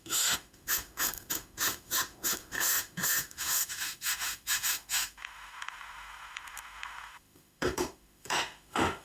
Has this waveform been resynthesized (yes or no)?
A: yes